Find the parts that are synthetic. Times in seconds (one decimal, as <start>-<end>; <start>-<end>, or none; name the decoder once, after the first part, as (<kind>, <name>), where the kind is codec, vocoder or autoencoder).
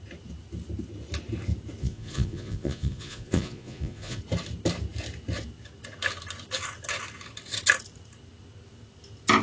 1.8-4.2 (vocoder, Vocos)